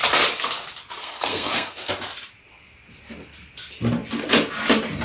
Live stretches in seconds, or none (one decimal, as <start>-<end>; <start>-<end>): 0.0-1.0; 1.9-5.0